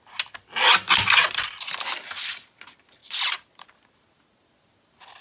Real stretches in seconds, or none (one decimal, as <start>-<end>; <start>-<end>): 0.0-5.2

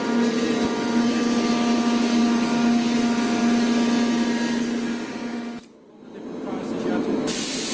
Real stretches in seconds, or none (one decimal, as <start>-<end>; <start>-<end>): 0.0-7.7

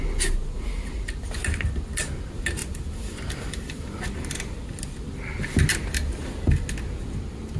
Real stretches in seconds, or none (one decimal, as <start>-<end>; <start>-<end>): 0.0-2.6; 4.0-7.6

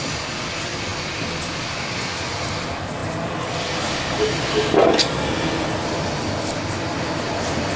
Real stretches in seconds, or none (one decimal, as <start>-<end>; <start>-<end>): 0.0-7.8

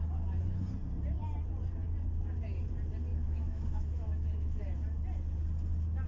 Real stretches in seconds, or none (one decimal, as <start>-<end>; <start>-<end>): 0.0-3.1; 4.6-6.1

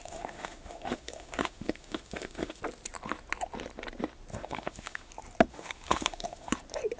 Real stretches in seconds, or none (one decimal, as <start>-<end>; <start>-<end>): 2.6-4.3; 5.1-5.5; 6.5-7.0

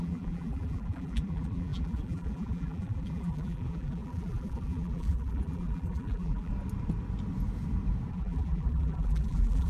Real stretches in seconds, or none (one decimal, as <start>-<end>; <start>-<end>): 6.5-8.1

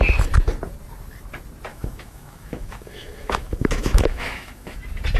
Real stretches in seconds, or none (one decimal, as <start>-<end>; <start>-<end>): 0.0-1.7; 4.8-5.2